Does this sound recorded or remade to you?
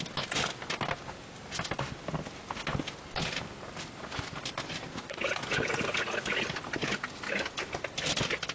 recorded